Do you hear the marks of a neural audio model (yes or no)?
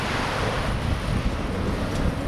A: no